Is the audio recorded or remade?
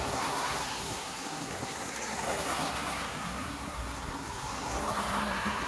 remade